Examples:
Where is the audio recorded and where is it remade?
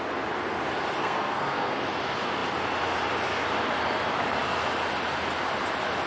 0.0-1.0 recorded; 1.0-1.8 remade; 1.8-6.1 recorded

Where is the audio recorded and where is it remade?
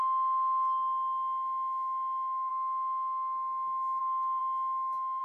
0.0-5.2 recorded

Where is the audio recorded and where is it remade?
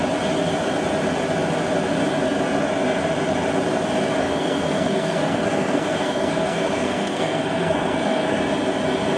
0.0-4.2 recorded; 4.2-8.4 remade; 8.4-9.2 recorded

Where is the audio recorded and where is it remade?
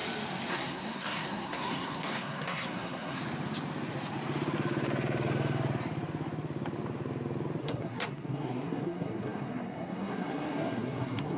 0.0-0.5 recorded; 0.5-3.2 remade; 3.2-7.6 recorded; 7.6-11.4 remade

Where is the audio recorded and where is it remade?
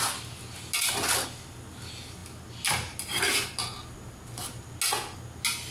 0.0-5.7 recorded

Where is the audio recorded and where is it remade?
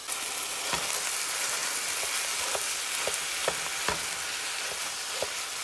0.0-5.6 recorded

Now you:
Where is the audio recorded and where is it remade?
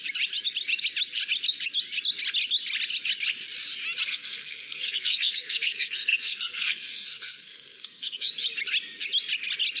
0.0-4.1 recorded; 4.1-8.3 remade; 8.3-9.8 recorded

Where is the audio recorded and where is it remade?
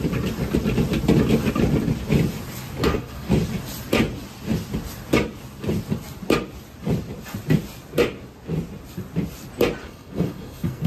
0.0-2.8 recorded; 2.8-3.3 remade; 3.3-9.8 recorded; 9.8-10.9 remade